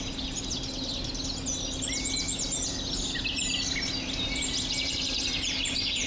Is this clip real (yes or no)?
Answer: yes